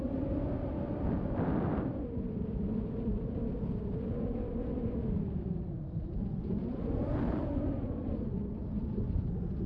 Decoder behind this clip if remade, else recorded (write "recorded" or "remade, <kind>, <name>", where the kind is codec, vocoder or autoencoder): recorded